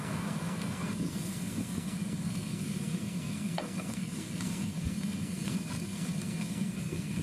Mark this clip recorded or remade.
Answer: remade